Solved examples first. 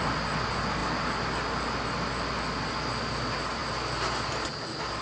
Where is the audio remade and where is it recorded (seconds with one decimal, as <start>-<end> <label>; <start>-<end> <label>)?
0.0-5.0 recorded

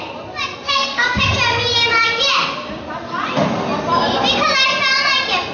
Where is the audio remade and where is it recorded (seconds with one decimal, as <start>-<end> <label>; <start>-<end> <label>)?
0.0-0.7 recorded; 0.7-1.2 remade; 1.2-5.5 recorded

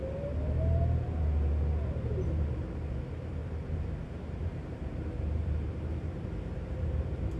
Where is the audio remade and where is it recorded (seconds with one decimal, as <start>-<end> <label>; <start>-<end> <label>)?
0.0-2.4 recorded; 2.4-3.4 remade; 3.4-4.2 recorded; 4.2-7.4 remade

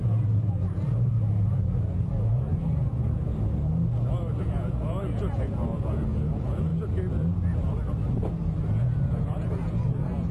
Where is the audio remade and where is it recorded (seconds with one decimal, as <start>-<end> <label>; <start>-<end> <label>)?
0.0-3.3 remade; 3.3-4.4 recorded; 4.4-6.7 remade; 6.7-8.7 recorded; 8.7-10.3 remade

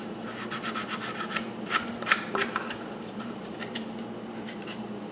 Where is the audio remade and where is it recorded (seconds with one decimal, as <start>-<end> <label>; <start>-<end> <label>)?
0.0-0.8 recorded; 0.8-3.9 remade; 3.9-5.1 recorded

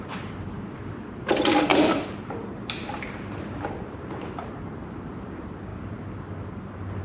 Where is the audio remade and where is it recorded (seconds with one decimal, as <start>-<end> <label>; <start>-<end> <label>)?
0.0-1.7 recorded; 1.7-4.5 remade; 4.5-7.0 recorded

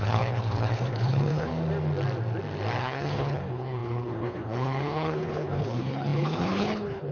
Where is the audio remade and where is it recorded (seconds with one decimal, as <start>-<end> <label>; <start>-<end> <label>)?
0.0-1.5 remade; 1.5-2.8 recorded; 2.8-7.1 remade

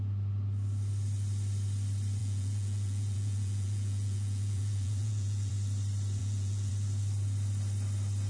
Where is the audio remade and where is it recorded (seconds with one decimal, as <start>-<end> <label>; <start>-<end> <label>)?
0.0-2.2 recorded; 2.2-5.5 remade; 5.5-6.2 recorded; 6.2-6.7 remade; 6.7-8.3 recorded